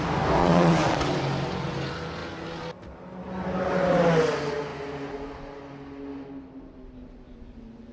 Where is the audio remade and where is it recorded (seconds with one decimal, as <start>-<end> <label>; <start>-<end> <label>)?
0.0-0.4 recorded; 0.4-1.0 remade; 1.0-7.9 recorded